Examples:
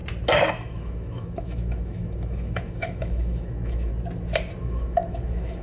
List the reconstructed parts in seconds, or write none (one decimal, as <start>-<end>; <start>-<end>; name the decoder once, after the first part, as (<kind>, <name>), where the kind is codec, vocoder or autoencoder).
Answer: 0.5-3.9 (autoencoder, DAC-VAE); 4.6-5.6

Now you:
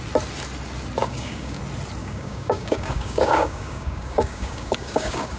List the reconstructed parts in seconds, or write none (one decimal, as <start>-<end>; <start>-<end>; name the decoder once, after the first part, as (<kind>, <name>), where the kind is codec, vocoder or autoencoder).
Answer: 1.0-1.6 (codec, DAC); 2.0-5.4

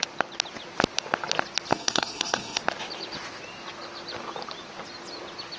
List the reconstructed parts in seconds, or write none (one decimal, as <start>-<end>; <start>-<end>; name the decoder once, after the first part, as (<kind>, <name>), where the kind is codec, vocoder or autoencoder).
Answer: 1.7-2.6 (codec, SNAC)

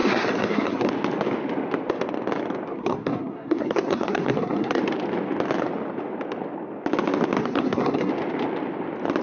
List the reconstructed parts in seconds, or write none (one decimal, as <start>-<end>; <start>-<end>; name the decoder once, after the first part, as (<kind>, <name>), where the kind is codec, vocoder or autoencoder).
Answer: 0.0-0.9 (codec, SNAC); 2.7-4.8; 7.4-8.1

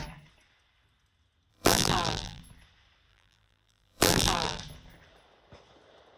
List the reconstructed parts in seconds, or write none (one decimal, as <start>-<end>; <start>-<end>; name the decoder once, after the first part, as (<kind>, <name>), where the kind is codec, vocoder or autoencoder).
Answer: 1.5-2.4 (vocoder, BigVGAN v2); 3.1-4.6

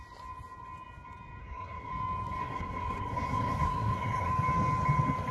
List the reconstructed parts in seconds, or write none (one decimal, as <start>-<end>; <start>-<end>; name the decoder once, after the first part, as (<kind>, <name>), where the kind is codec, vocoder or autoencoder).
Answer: 1.4-1.9 (codec, SNAC); 2.4-4.3